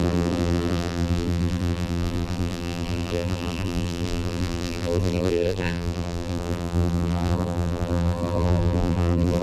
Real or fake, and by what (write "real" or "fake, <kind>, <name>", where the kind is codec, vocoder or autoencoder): fake, vocoder, BigVGAN v2